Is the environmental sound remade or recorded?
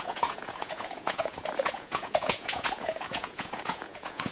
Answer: remade